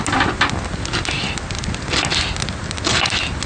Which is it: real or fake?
real